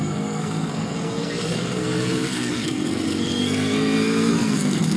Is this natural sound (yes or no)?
no